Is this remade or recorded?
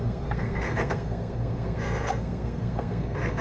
remade